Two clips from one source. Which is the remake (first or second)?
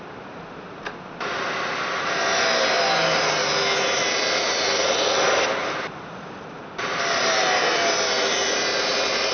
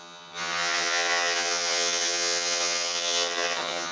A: second